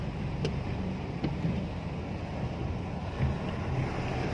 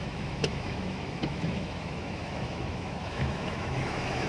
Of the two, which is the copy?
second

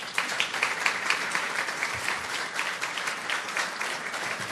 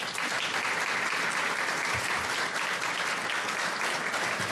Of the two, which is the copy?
first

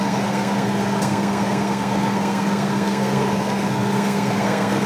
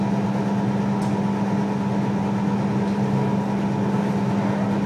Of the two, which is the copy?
first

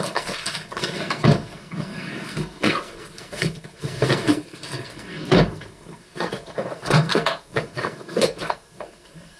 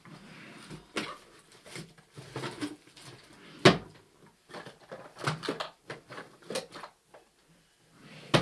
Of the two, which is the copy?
first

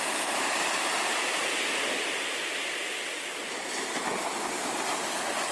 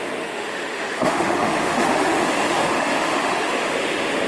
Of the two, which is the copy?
second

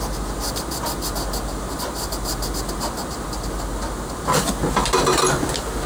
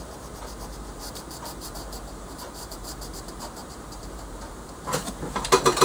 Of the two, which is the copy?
second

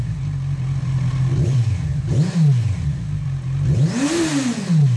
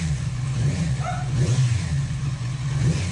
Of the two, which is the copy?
second